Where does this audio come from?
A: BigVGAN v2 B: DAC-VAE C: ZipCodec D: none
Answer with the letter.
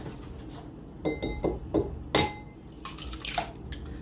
D